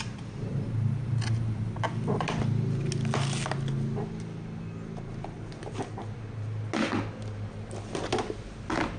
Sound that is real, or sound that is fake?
real